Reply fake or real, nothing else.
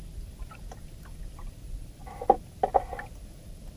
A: fake